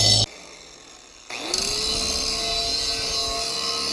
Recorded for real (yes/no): yes